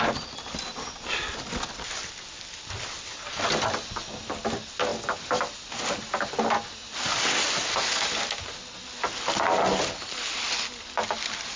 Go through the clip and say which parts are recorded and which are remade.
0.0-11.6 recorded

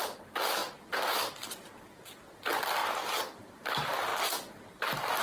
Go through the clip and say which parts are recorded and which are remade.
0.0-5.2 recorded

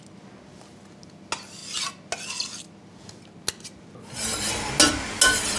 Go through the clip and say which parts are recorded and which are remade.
0.0-5.6 recorded

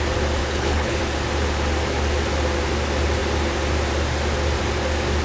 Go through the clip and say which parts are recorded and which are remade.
0.0-0.4 recorded; 0.4-1.0 remade; 1.0-5.2 recorded

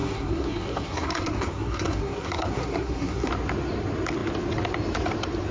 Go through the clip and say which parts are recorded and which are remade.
0.0-3.3 remade; 3.3-5.5 recorded

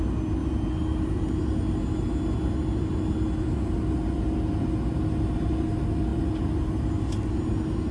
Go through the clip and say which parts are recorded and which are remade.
0.0-7.9 recorded

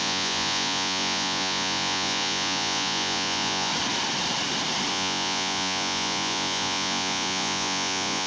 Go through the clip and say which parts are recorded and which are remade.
0.0-3.7 remade; 3.7-4.9 recorded; 4.9-8.3 remade

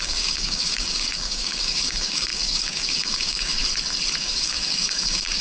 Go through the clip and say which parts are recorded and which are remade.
0.0-3.6 remade; 3.6-4.2 recorded; 4.2-5.4 remade